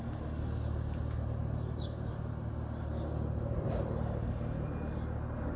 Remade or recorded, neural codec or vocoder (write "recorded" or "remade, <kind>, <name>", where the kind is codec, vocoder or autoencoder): recorded